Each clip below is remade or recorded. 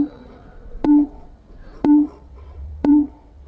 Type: remade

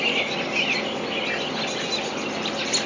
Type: recorded